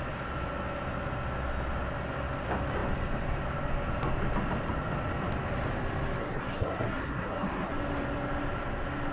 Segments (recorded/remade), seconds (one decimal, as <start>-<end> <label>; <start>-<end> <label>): 0.0-6.2 recorded; 6.2-7.7 remade; 7.7-9.1 recorded